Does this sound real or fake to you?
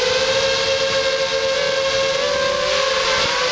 real